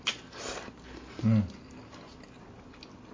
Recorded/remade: recorded